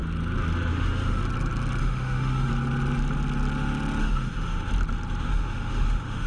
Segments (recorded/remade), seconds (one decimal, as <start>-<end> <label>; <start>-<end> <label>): 0.0-0.7 recorded; 0.7-1.2 remade; 1.2-1.8 recorded; 1.8-2.5 remade; 2.5-4.0 recorded; 4.0-4.7 remade; 4.7-5.2 recorded; 5.2-6.3 remade